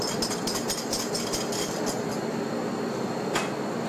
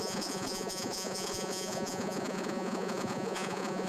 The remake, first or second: second